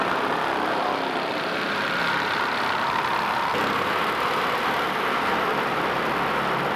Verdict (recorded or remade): remade